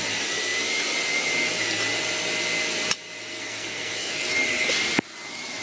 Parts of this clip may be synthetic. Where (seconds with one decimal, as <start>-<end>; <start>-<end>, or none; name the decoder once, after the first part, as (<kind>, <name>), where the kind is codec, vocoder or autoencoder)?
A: 3.3-4.1 (codec, SNAC)